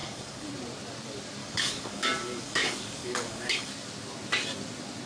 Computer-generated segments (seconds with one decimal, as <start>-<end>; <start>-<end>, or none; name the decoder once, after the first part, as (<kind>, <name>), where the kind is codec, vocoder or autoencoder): 0.0-0.5 (codec, DAC); 1.4-3.7